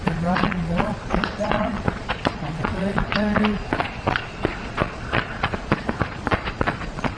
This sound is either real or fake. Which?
fake